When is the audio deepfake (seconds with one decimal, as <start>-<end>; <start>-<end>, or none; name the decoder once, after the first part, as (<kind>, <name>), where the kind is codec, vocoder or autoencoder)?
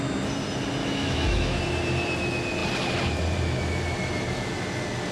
0.8-1.6 (autoencoder, DAC-VAE)